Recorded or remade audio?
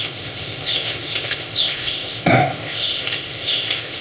remade